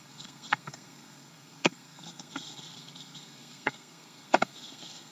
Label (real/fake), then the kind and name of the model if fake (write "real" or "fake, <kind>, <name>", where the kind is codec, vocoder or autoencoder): fake, codec, SNAC